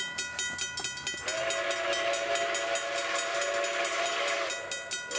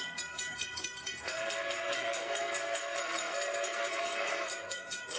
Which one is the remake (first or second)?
second